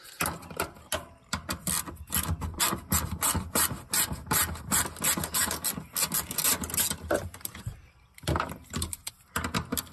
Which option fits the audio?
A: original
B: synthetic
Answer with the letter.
A